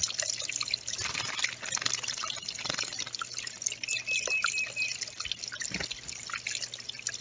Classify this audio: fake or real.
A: real